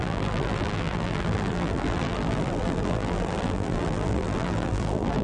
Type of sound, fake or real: fake